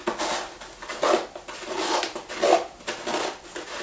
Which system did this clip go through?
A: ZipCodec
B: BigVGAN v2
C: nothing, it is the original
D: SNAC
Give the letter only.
C